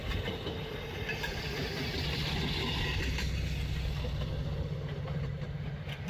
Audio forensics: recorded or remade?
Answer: recorded